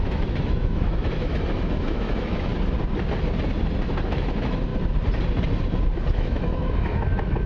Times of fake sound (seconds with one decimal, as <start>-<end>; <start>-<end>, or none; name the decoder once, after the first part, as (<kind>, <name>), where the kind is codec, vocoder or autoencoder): 0.0-2.5 (autoencoder, DAC-VAE); 4.0-4.7; 6.1-7.5